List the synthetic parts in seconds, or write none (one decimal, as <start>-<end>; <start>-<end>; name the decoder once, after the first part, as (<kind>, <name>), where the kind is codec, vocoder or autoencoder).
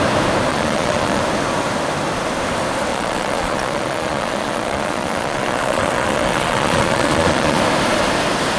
0.5-1.2 (vocoder, Vocos); 2.9-7.6